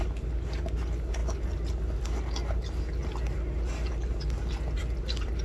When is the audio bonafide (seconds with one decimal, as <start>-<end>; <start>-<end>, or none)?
0.0-5.4